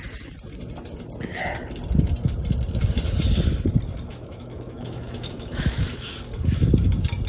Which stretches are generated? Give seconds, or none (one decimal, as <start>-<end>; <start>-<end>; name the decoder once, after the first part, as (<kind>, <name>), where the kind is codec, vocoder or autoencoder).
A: 4.1-6.1 (autoencoder, DAC-VAE)